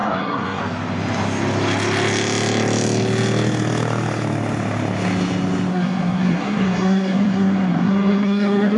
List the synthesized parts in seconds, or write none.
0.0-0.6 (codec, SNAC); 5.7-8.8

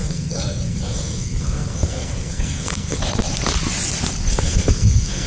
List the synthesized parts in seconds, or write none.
0.0-3.0 (codec, SNAC); 4.3-5.3